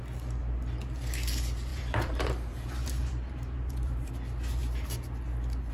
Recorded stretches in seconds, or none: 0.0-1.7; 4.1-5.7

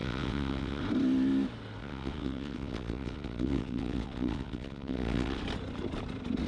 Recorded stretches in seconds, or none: 0.8-1.8; 5.4-6.5

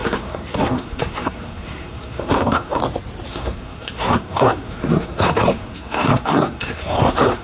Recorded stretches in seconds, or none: 2.8-3.3

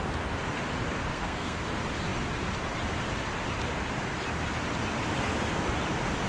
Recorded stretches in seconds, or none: 0.0-1.1; 1.6-6.3

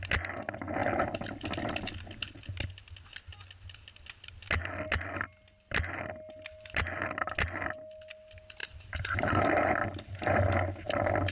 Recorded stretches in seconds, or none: 0.0-8.6; 9.7-11.3

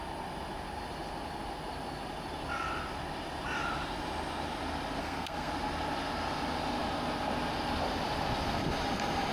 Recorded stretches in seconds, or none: 0.0-5.0; 5.5-9.3